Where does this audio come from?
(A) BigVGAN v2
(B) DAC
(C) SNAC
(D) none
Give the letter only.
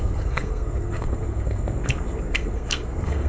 C